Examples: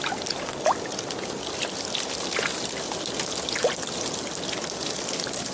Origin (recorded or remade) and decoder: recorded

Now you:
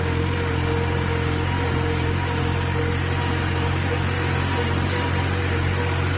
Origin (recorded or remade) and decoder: recorded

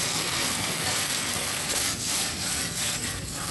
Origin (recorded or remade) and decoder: remade, codec, SNAC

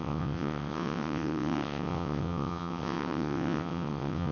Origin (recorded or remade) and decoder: remade, vocoder, WaveNeXt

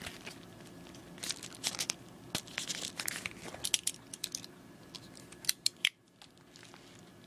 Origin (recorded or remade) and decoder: recorded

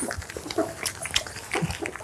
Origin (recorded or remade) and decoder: recorded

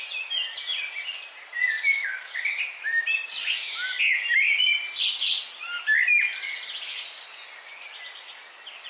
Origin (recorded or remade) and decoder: recorded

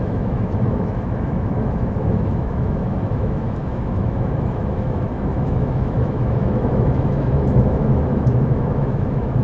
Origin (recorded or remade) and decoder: remade, autoencoder, DAC-VAE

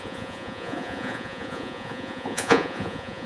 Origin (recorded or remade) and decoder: remade, vocoder, Vocos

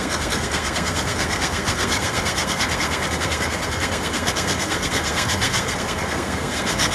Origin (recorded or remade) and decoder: remade, codec, SNAC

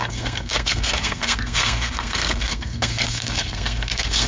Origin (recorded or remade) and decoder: remade, codec, SNAC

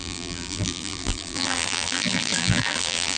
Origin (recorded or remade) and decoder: remade, vocoder, BigVGAN v2